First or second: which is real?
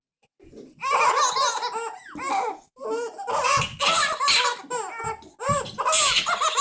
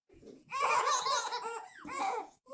first